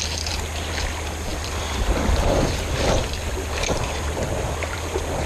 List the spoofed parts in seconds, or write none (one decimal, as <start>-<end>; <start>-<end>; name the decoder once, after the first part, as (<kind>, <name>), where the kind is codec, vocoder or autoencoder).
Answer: none